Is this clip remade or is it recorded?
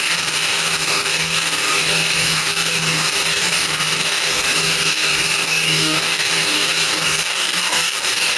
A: remade